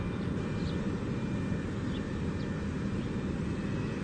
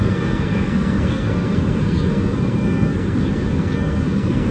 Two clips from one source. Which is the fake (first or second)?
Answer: second